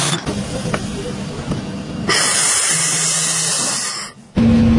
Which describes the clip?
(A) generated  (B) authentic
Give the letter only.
B